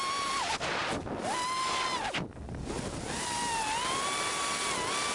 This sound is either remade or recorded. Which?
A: recorded